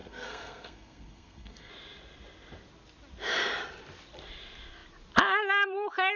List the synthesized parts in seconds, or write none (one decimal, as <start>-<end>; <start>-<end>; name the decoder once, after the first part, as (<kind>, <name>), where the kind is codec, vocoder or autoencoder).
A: 0.0-1.7 (codec, SNAC)